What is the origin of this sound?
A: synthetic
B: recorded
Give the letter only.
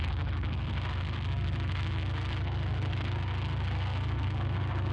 A